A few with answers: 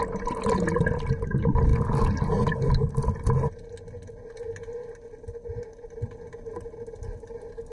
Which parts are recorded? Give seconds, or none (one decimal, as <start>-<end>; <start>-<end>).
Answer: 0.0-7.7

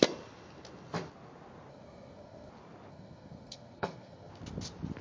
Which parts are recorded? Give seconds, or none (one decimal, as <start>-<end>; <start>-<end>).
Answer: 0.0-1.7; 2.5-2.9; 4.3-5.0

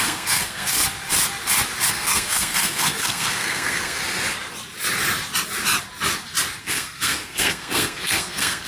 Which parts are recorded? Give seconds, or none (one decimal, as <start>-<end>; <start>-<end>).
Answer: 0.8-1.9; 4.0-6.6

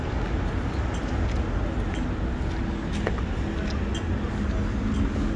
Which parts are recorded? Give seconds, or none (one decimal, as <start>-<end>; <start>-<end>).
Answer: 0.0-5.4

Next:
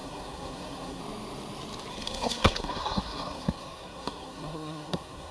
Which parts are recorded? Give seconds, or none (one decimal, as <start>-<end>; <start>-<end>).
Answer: 1.0-1.9

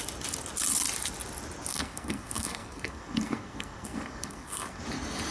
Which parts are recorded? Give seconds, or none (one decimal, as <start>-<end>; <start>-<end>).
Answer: 0.0-1.7; 4.8-5.3